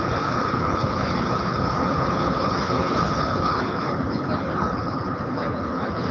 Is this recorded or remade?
remade